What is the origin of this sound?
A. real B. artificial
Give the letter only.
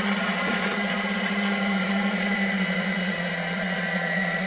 B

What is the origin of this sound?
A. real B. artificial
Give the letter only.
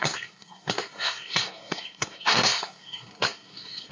B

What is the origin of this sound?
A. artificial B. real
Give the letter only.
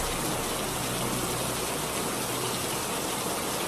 B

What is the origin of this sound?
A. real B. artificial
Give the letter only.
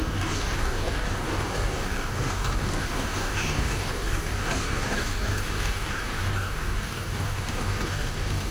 B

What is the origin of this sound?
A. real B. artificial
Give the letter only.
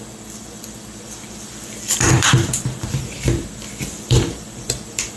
B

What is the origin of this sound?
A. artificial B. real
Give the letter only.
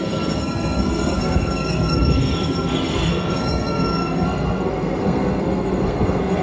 A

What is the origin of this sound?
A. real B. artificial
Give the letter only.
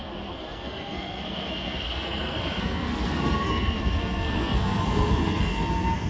B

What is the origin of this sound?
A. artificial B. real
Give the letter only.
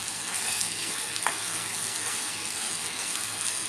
A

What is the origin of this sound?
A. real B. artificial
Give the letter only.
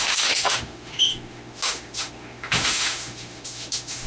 B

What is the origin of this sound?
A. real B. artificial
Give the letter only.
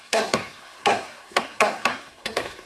B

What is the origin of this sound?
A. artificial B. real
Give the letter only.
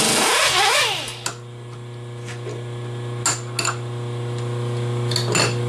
B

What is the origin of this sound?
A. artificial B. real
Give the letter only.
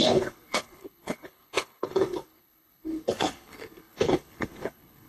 A